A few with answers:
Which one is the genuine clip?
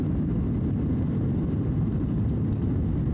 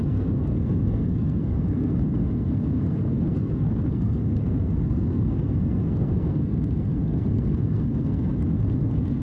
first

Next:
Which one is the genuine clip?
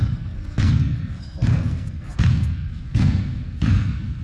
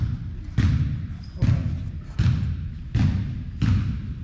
second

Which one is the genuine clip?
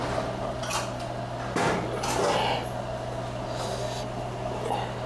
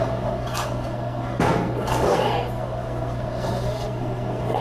first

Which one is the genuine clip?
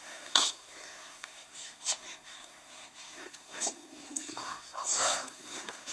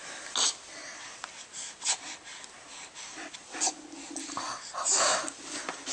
second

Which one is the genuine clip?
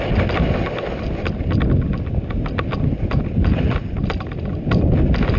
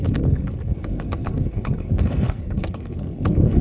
first